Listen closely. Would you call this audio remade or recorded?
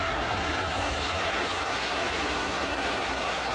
remade